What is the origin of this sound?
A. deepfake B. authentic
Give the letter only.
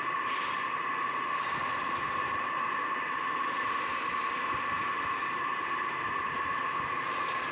B